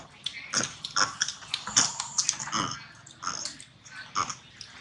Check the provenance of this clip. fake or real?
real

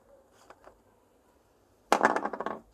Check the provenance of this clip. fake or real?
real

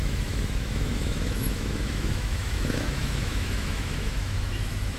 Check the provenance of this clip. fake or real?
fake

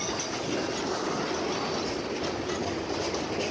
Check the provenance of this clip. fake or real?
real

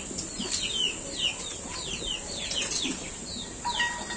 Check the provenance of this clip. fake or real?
real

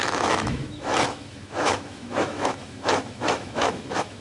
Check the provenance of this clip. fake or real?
fake